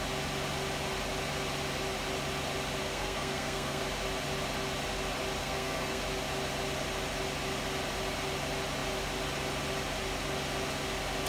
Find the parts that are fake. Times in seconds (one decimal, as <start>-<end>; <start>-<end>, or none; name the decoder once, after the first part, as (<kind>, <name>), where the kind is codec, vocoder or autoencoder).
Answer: 2.8-3.8 (codec, SNAC); 5.4-6.0